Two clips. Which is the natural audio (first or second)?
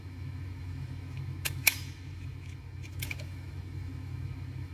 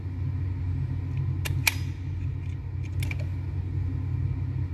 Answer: second